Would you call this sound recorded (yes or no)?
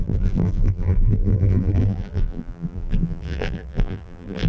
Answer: no